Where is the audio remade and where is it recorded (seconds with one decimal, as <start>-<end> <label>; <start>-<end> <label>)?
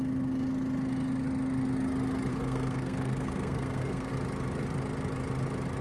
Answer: 0.0-2.3 recorded; 2.3-4.1 remade; 4.1-5.8 recorded